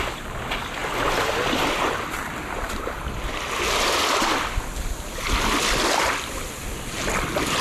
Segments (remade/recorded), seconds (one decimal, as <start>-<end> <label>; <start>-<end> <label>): 0.0-7.6 recorded